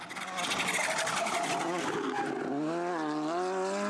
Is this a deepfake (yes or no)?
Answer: no